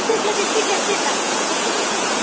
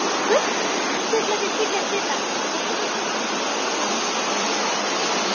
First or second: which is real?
second